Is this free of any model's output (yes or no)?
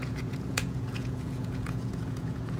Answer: no